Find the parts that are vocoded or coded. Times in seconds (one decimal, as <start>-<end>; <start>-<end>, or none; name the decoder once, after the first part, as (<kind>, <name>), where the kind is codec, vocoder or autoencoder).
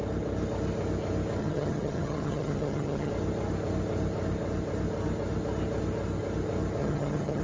1.4-3.1 (vocoder, HiFi-GAN); 6.8-7.4